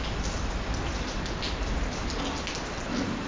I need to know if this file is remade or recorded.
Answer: recorded